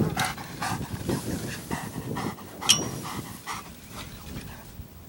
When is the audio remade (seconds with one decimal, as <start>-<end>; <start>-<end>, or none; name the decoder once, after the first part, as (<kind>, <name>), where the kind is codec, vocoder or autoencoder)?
none